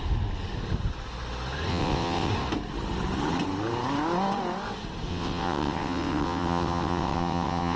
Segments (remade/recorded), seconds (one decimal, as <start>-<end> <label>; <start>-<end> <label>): 0.0-1.7 recorded; 1.7-2.3 remade; 2.3-5.1 recorded; 5.1-7.8 remade